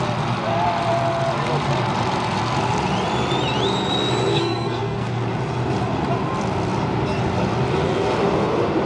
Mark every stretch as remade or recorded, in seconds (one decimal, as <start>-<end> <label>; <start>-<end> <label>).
0.0-4.3 recorded; 4.3-5.2 remade; 5.2-8.9 recorded